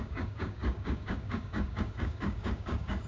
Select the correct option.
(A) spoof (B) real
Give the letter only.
A